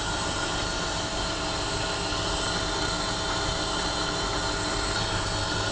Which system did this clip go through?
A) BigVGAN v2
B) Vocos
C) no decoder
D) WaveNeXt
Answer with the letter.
C